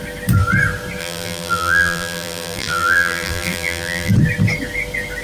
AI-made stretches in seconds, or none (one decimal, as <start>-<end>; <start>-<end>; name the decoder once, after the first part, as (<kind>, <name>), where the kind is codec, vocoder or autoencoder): 1.0-4.1 (vocoder, BigVGAN v2)